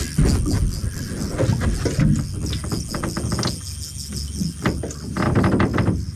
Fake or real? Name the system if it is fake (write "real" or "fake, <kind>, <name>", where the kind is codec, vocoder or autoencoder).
real